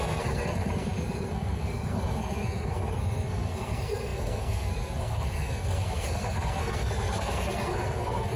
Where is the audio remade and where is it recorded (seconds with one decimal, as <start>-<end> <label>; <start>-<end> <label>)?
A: 0.0-8.4 remade